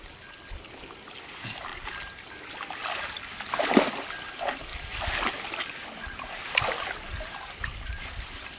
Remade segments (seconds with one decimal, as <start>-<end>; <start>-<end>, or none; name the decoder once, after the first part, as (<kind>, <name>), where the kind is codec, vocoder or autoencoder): 1.7-2.3 (vocoder, BigVGAN v2); 5.8-8.1